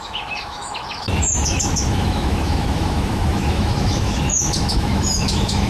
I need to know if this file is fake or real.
fake